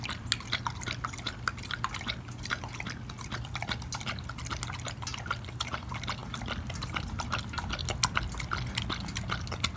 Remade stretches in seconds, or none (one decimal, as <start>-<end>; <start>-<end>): 6.2-7.7